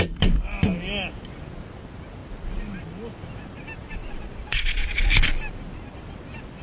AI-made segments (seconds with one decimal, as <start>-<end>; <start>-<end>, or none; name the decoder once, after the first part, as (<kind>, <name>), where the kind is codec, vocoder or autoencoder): 4.0-5.0 (vocoder, Vocos)

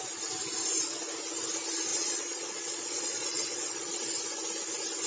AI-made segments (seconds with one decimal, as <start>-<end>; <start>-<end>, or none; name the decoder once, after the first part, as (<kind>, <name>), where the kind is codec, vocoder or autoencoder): 1.9-4.0 (vocoder, Vocos)

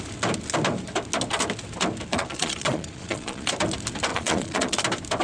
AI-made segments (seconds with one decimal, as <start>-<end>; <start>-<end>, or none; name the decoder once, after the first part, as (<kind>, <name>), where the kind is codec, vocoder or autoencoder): 2.1-3.5 (vocoder, Vocos); 4.1-4.8